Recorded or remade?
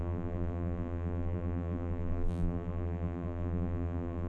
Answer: remade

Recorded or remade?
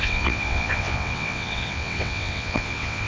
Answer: remade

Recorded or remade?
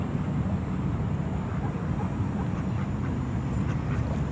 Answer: remade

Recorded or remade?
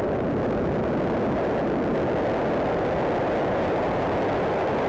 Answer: recorded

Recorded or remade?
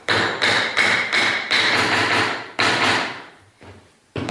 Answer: remade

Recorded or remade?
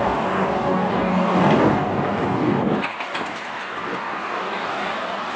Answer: remade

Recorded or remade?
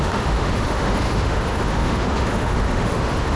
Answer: remade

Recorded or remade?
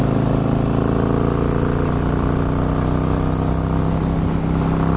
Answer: recorded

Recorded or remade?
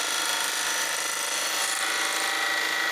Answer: recorded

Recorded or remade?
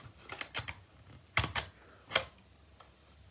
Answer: recorded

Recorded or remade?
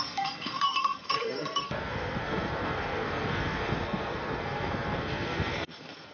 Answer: remade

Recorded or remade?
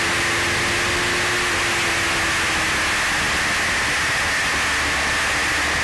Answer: recorded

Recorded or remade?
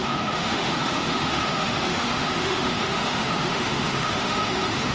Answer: remade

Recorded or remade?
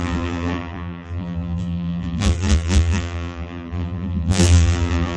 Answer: remade